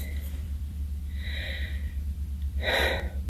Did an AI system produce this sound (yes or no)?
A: yes